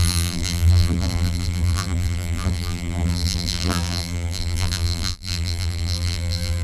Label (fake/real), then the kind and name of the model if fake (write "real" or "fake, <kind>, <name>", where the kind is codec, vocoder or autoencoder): fake, vocoder, BigVGAN v2